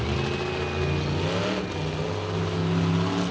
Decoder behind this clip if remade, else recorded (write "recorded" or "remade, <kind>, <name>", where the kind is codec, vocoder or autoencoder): recorded